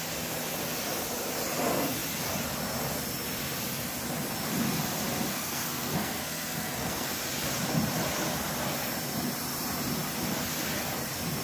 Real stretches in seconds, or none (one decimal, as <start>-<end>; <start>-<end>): 0.0-5.3; 7.1-11.4